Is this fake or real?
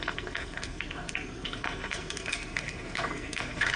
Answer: fake